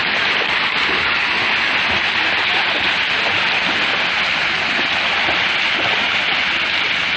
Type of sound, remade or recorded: recorded